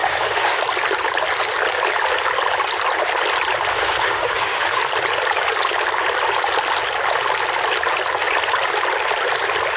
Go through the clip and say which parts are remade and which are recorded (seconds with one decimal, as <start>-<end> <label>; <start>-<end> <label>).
0.0-0.6 remade; 0.6-3.7 recorded; 3.7-4.8 remade; 4.8-9.8 recorded